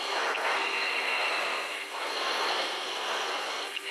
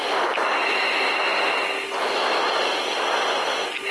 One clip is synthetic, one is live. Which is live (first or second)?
second